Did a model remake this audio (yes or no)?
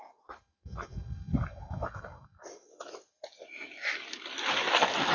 no